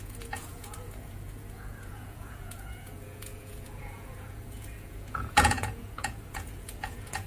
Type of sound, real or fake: fake